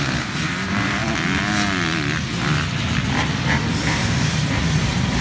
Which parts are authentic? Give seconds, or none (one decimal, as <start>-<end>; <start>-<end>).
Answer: 1.0-3.2